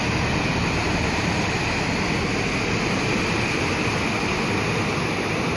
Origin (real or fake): real